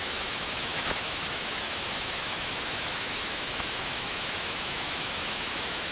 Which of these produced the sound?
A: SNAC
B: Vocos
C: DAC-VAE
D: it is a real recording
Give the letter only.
C